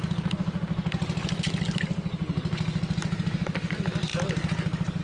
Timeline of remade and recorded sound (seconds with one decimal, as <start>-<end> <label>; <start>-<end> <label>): 0.0-5.0 recorded